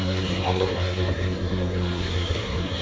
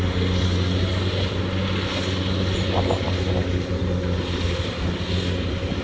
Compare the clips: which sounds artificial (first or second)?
first